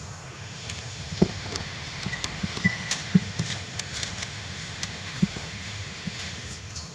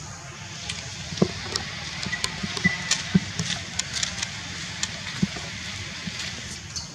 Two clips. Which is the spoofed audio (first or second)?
first